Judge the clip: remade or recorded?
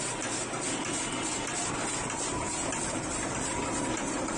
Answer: recorded